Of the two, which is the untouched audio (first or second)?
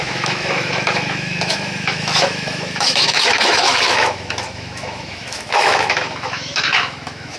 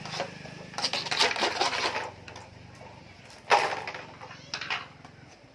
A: second